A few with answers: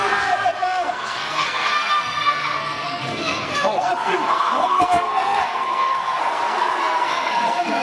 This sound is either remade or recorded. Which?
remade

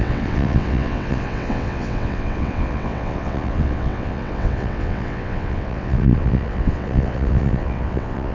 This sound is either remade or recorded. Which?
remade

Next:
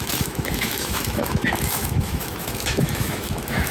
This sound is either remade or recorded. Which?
remade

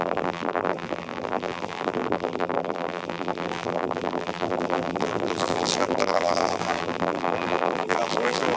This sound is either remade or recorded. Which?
remade